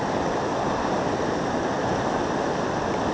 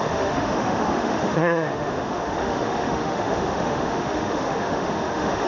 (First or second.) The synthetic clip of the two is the second